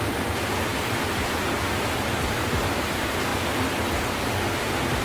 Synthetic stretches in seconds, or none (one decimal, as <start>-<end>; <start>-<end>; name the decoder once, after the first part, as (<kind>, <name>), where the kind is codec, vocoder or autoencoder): none